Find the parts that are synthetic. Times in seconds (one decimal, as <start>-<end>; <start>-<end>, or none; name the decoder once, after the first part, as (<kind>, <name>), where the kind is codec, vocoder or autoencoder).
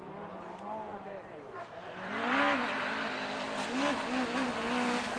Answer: none